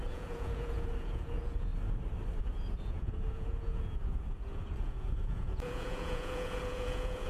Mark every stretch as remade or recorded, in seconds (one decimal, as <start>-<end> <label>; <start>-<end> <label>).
0.0-1.7 remade; 1.7-2.4 recorded; 2.4-7.3 remade